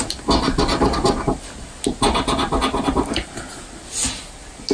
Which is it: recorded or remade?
recorded